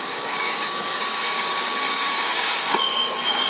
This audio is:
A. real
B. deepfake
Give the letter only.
B